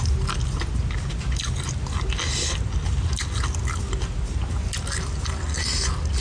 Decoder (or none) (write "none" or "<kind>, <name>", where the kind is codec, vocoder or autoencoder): none